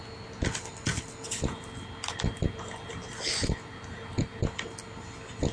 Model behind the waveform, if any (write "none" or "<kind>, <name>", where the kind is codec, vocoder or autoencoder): none